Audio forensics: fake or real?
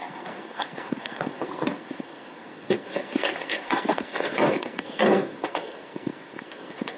fake